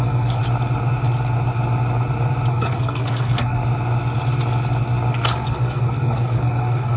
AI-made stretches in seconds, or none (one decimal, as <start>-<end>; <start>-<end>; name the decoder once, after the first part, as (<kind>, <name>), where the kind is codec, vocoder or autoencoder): 0.0-0.4 (codec, SNAC); 2.5-3.6; 5.1-7.0